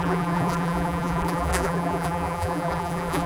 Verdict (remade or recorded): remade